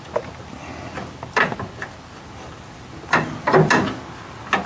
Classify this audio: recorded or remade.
recorded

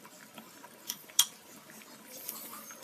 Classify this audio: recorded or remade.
remade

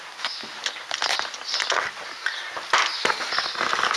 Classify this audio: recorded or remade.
recorded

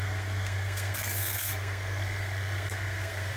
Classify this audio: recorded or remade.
remade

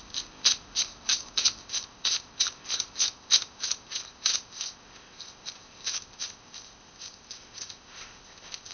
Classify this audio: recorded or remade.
remade